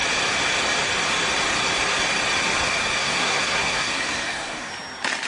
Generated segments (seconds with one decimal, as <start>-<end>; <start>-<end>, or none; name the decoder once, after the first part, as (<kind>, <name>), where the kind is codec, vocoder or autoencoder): 3.0-4.7 (codec, SNAC)